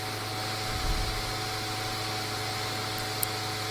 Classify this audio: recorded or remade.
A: recorded